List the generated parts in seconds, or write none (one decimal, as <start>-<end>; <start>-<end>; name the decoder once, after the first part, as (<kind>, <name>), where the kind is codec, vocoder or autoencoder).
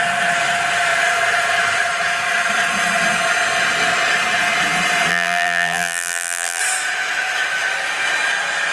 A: 5.1-6.6 (vocoder, BigVGAN v2)